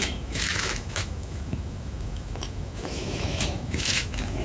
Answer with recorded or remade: remade